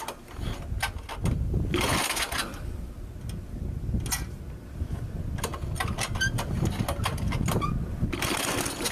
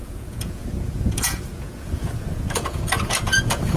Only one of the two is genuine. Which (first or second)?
first